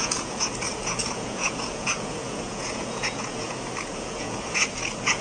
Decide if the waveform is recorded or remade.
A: remade